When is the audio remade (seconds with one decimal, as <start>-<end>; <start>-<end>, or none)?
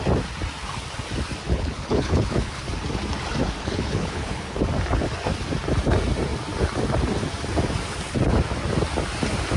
1.5-2.7; 3.6-4.6